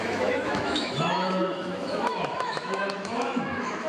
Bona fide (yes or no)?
no